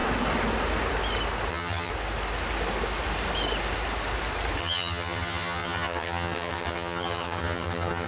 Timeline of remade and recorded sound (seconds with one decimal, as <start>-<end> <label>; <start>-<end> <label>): 0.0-1.5 recorded; 1.5-1.9 remade; 1.9-4.6 recorded; 4.6-8.1 remade